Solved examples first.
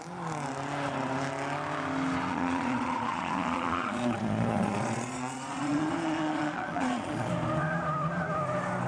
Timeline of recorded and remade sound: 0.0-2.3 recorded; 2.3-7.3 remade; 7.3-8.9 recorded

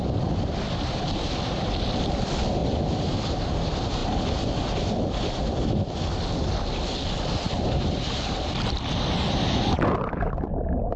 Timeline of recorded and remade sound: 0.0-11.0 recorded

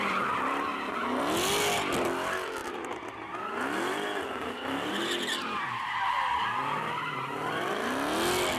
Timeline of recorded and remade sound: 0.0-8.6 recorded

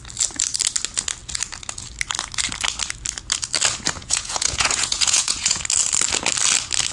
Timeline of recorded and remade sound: 0.0-4.0 recorded; 4.0-5.6 remade; 5.6-6.9 recorded

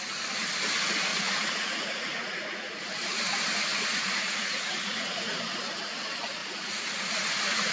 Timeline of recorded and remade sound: 0.0-1.1 recorded; 1.1-2.8 remade; 2.8-3.7 recorded; 3.7-5.4 remade; 5.4-6.4 recorded; 6.4-7.7 remade

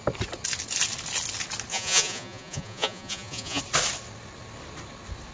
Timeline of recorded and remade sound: 0.0-1.7 recorded; 1.7-3.6 remade; 3.6-5.3 recorded